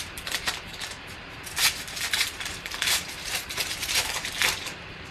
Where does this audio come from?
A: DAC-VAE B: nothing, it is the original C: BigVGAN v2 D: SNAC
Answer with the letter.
C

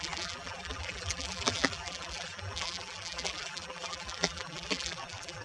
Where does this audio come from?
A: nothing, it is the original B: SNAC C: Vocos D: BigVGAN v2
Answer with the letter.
D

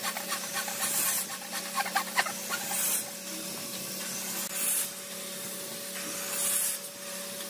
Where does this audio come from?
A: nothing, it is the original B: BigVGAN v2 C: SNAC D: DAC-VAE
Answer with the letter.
A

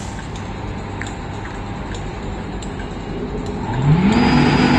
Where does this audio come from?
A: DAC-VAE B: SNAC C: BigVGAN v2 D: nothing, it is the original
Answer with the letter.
D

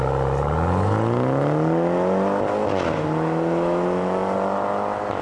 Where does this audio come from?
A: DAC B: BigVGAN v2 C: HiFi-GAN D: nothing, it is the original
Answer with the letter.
D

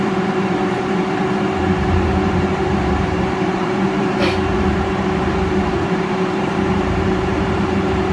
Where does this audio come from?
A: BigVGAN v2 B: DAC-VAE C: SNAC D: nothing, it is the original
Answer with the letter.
A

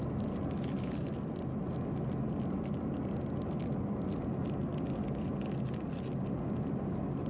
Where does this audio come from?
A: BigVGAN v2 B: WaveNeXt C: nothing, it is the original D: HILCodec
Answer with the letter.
C